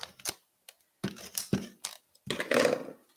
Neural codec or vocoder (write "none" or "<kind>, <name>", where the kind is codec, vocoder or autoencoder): none